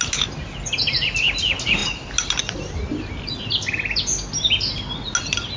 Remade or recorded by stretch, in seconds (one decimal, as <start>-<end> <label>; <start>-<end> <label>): 0.0-5.6 recorded